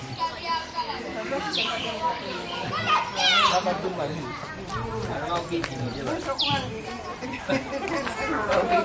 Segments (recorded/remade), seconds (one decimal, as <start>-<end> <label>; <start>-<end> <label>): 0.0-0.6 recorded; 0.6-2.7 remade; 2.7-8.8 recorded

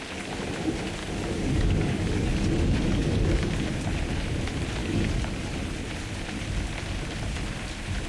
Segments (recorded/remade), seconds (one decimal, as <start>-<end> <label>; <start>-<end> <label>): 0.0-1.0 recorded; 1.0-3.5 remade; 3.5-4.8 recorded; 4.8-5.6 remade; 5.6-8.1 recorded